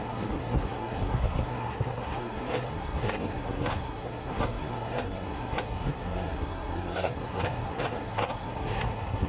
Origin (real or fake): fake